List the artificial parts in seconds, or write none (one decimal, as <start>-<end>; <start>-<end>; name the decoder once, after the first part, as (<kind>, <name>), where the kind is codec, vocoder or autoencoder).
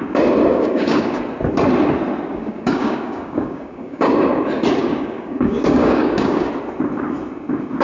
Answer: 0.5-1.2 (codec, DAC); 2.3-4.1; 4.8-6.5